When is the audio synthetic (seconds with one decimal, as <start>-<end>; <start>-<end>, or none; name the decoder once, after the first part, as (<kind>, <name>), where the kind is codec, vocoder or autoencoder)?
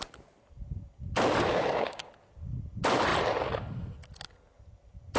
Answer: 1.5-2.1 (codec, DAC)